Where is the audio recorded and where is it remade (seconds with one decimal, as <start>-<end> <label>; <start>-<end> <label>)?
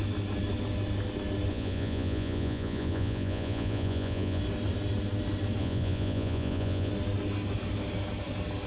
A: 0.0-1.5 recorded; 1.5-4.4 remade; 4.4-5.6 recorded; 5.6-6.9 remade; 6.9-8.7 recorded